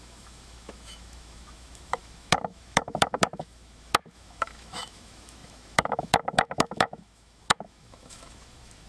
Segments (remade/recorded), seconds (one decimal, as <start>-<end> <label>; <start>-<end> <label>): 0.0-8.9 remade